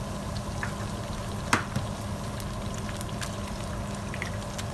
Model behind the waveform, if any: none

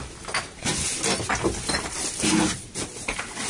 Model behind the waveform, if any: none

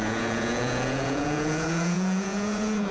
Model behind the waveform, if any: vocoder, Vocos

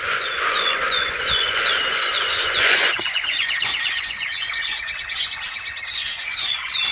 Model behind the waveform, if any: vocoder, Vocos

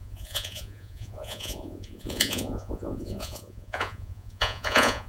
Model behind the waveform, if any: vocoder, Vocos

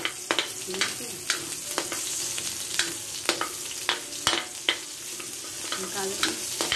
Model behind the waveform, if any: none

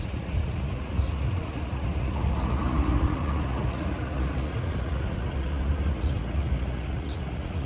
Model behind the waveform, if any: vocoder, Vocos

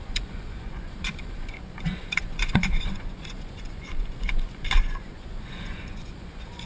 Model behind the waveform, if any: vocoder, Vocos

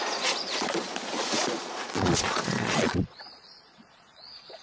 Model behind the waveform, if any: vocoder, Vocos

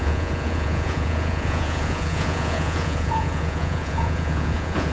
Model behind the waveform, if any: vocoder, Vocos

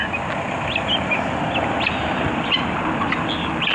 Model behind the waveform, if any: none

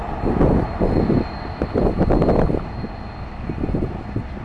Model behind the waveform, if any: none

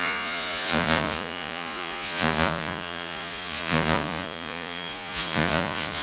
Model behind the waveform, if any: vocoder, Vocos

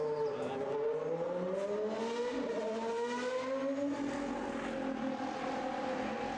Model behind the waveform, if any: none